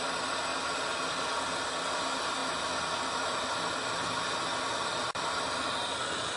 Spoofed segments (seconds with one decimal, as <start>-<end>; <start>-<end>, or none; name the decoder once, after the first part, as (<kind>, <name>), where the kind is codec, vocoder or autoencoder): none